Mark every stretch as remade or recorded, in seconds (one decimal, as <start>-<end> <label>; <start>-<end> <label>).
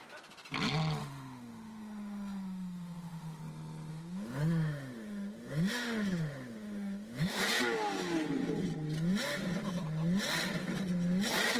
0.0-1.0 recorded; 1.0-3.4 remade; 3.4-3.9 recorded; 3.9-7.4 remade; 7.4-11.6 recorded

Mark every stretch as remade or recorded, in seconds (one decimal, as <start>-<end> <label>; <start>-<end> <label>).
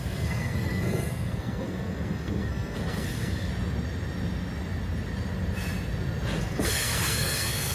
0.0-3.5 remade; 3.5-6.4 recorded; 6.4-7.7 remade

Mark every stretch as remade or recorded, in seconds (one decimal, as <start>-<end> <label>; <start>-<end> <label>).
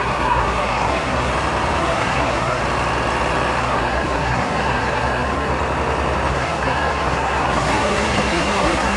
0.0-1.3 remade; 1.3-1.8 recorded; 1.8-2.6 remade; 2.6-3.6 recorded; 3.6-5.5 remade; 5.5-6.3 recorded; 6.3-9.0 remade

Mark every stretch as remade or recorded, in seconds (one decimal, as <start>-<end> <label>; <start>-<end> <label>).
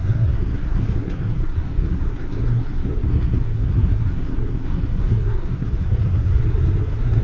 0.0-7.2 remade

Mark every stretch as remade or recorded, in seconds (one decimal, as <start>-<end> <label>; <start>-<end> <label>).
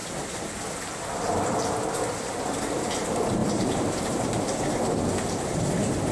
0.0-3.4 recorded; 3.4-4.3 remade; 4.3-6.1 recorded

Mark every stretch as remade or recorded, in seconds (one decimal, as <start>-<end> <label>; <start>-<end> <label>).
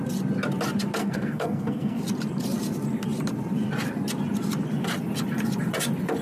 0.0-1.0 recorded; 1.0-2.0 remade; 2.0-6.2 recorded